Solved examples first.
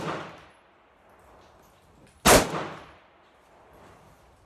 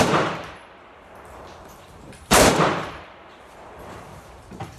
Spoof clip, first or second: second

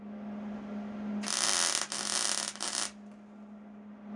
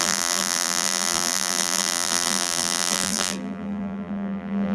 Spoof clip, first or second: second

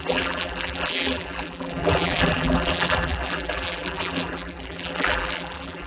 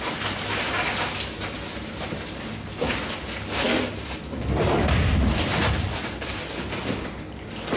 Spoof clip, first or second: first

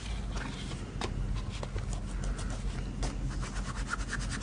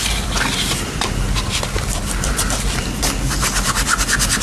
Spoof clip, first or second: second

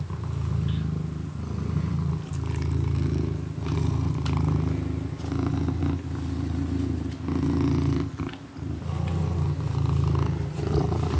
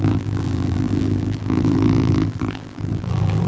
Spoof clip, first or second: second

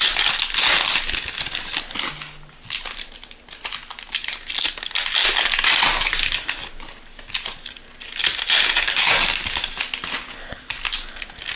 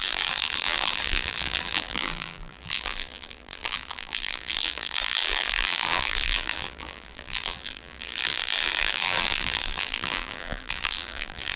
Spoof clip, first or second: second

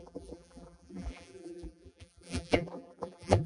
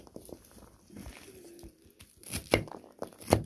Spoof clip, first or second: first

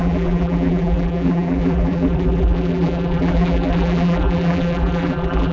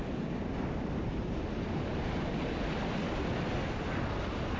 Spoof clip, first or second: first